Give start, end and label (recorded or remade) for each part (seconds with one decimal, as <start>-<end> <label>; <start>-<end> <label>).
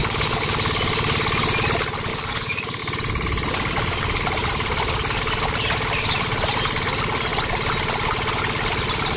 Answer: 0.0-0.5 remade; 0.5-2.1 recorded; 2.1-2.8 remade; 2.8-9.2 recorded